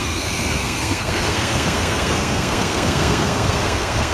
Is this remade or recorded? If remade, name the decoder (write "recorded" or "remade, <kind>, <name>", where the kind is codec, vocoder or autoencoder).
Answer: remade, codec, SNAC